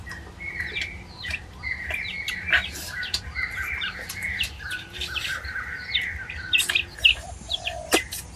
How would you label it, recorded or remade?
recorded